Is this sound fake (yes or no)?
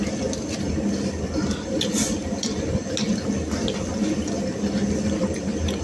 no